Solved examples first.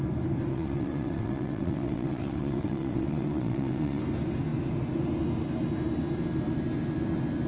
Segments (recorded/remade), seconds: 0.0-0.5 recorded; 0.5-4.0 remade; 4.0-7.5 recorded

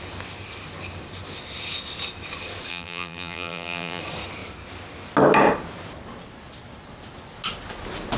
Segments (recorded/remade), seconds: 0.0-2.7 recorded; 2.7-4.0 remade; 4.0-8.2 recorded